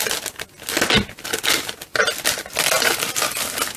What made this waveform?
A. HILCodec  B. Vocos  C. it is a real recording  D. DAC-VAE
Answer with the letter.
C